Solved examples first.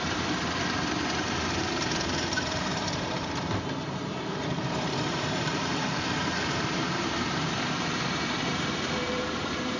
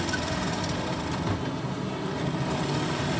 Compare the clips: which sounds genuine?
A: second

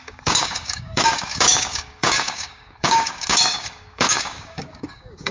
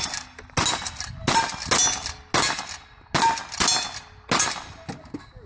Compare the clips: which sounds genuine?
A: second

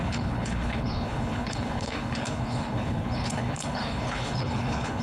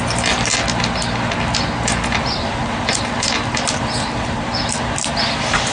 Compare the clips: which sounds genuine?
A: second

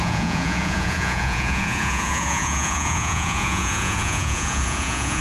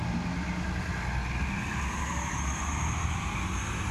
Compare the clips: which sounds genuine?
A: second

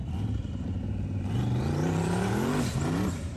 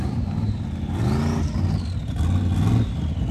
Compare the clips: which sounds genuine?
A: second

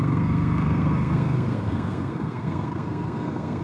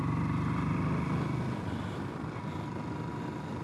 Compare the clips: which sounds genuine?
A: second